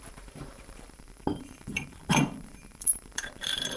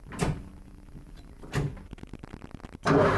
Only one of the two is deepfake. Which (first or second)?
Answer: first